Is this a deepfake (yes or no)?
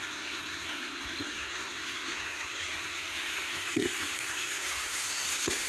yes